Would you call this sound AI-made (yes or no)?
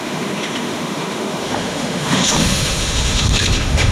yes